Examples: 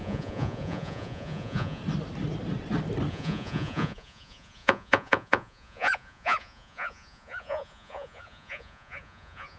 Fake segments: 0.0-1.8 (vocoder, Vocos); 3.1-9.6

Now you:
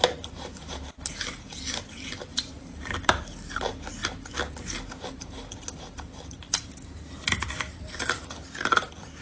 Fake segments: none

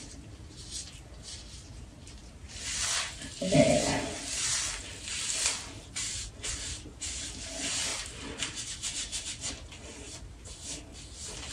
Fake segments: none

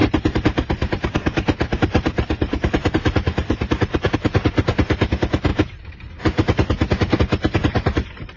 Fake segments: 0.0-4.1 (vocoder, BigVGAN v2); 5.5-7.2

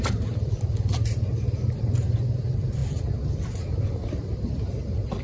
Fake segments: 0.0-5.2 (vocoder, BigVGAN v2)